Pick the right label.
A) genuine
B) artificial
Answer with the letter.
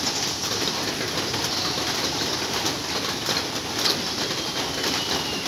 A